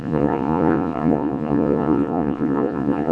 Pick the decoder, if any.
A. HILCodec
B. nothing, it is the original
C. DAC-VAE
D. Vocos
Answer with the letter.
D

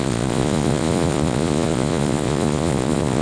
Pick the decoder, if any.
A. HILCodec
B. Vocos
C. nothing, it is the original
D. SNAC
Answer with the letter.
B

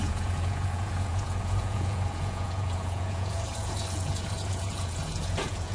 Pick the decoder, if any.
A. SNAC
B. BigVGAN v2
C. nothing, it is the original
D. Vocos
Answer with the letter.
D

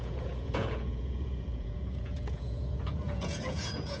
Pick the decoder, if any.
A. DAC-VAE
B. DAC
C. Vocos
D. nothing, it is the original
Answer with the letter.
C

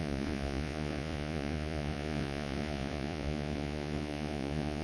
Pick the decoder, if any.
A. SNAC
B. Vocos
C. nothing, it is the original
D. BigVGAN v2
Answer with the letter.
B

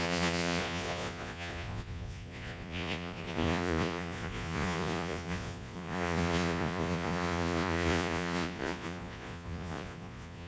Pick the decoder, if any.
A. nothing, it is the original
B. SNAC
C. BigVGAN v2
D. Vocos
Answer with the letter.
D